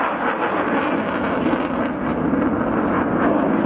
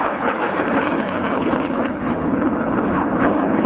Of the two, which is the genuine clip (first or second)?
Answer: first